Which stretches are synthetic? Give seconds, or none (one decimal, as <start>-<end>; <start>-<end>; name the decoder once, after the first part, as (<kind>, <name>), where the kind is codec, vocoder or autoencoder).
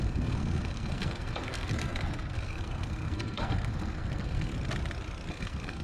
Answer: 0.0-4.5 (codec, SNAC); 5.3-5.8